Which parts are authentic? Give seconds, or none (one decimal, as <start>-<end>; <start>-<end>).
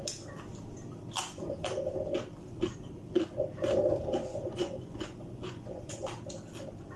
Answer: 0.0-4.3; 5.9-7.0